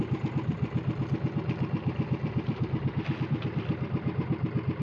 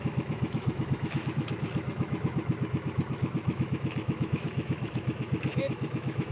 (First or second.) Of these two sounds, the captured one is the first